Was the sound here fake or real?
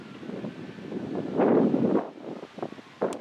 real